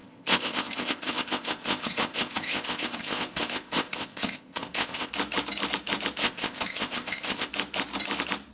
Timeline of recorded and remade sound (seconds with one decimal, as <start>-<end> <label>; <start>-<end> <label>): 0.0-5.1 remade; 5.1-6.2 recorded; 6.2-7.5 remade; 7.5-8.5 recorded